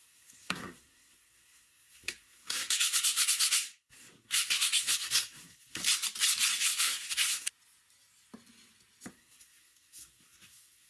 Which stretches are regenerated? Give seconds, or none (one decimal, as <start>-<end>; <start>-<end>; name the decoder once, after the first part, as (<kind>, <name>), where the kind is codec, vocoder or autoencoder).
0.0-5.8 (codec, SNAC); 6.6-7.5; 9.1-10.9